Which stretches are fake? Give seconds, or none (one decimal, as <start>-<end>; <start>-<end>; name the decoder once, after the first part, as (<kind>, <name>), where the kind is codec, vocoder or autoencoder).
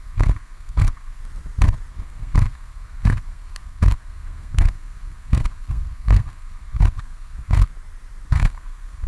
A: 0.0-1.2 (codec, SNAC); 1.9-7.7; 8.3-9.1